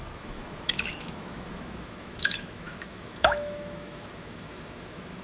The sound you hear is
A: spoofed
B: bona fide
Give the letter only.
A